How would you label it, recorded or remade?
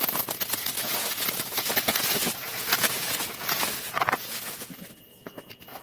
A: remade